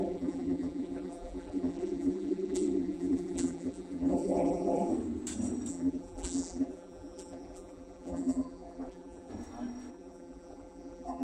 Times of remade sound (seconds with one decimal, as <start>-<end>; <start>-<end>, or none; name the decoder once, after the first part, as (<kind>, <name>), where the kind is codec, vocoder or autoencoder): 0.0-4.9 (vocoder, BigVGAN v2); 5.7-9.3; 9.9-11.2